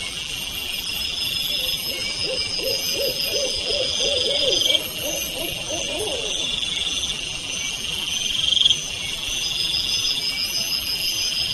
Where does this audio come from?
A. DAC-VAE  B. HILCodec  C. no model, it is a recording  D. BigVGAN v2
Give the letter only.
D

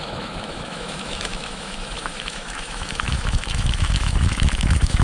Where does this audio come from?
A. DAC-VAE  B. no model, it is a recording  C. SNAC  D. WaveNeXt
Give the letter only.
A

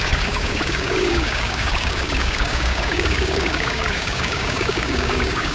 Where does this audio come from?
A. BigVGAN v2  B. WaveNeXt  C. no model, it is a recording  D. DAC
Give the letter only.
D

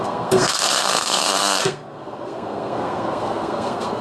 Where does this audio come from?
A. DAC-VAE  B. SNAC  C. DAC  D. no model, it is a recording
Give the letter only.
B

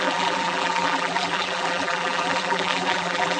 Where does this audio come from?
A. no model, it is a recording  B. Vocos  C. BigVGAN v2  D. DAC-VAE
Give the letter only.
C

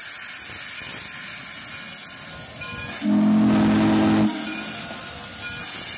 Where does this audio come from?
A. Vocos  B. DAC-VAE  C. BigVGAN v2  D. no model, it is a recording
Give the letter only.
D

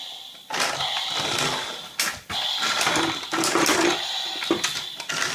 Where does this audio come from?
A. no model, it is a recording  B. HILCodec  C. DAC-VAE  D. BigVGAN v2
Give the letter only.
A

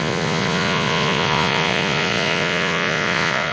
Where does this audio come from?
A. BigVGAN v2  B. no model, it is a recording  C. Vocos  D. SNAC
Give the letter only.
C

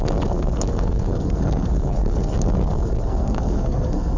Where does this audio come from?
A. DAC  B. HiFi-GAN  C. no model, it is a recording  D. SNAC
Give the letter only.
D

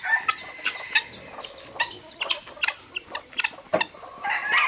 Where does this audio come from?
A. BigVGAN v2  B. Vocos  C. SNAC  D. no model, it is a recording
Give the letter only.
D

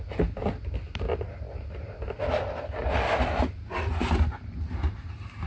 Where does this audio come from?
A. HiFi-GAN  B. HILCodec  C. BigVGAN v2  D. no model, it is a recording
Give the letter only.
D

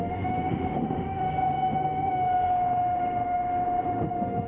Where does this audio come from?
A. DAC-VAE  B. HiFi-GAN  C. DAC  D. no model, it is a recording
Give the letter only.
A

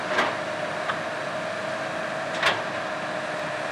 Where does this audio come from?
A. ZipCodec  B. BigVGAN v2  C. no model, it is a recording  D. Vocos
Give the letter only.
C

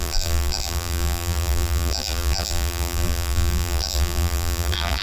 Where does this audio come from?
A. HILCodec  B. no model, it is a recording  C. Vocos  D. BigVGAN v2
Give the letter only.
D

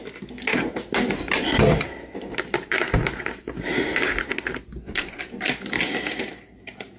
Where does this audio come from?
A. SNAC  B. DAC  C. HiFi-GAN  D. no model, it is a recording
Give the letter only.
D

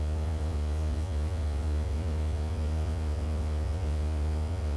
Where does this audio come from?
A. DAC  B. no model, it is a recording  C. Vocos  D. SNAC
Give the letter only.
C